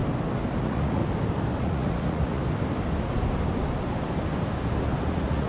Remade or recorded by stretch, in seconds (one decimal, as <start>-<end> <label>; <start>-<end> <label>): 0.0-0.6 recorded; 0.6-1.0 remade; 1.0-1.6 recorded; 1.6-2.4 remade; 2.4-5.1 recorded; 5.1-5.5 remade